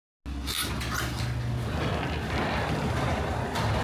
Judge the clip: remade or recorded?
recorded